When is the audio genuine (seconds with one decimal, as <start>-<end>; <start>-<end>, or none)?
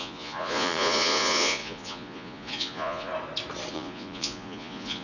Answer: 3.1-3.7